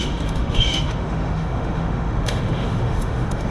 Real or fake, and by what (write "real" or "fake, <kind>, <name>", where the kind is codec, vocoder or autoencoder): fake, autoencoder, DAC-VAE